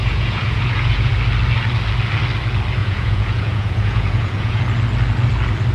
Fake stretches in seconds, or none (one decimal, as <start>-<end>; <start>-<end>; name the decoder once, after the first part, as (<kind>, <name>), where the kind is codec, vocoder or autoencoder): 0.0-1.1 (vocoder, Vocos); 2.8-4.6